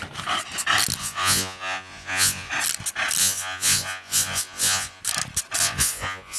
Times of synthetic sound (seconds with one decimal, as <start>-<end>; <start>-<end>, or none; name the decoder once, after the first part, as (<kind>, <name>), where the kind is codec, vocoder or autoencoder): 1.0-2.5 (vocoder, Vocos); 3.2-5.0; 5.6-6.4